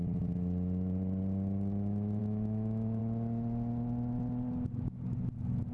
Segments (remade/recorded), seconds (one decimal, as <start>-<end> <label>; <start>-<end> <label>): 0.0-2.2 recorded; 2.2-3.0 remade; 3.0-5.7 recorded